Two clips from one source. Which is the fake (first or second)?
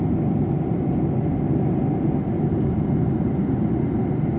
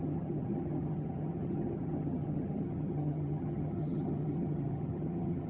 second